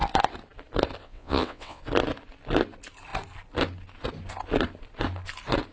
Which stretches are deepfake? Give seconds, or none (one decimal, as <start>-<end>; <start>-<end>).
1.0-1.8